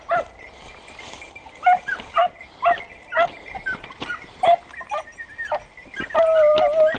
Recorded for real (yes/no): yes